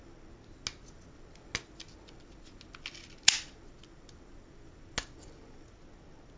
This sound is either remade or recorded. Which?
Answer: recorded